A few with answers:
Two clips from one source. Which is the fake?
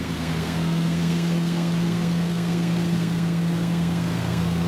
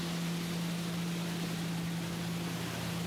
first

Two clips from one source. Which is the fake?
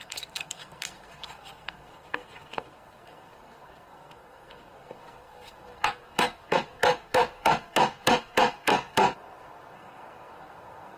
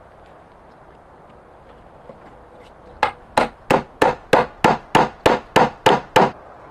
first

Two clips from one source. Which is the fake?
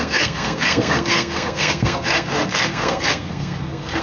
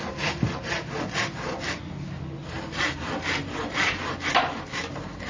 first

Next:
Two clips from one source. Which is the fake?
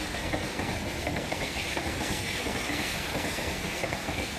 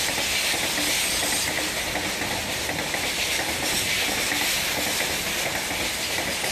first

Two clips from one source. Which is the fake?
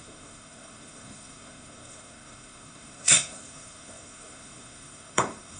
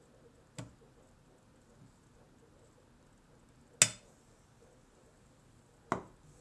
first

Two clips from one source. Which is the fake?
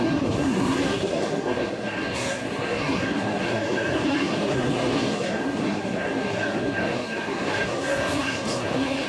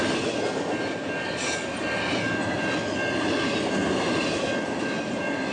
first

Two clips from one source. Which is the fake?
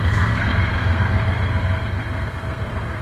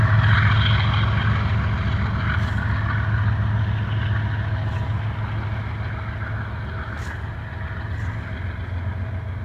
first